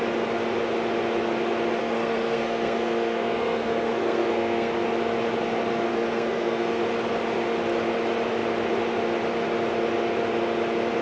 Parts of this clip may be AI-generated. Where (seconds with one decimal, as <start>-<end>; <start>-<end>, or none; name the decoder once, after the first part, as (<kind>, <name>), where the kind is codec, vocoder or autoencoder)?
1.8-4.8 (codec, SNAC); 5.9-6.8